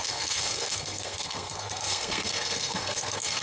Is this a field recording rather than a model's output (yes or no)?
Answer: no